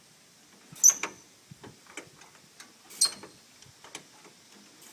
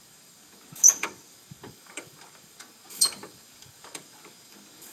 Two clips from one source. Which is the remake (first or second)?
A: second